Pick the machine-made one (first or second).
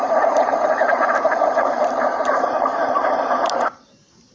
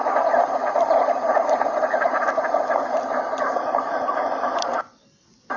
first